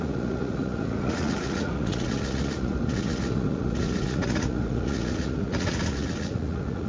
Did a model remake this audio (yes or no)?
yes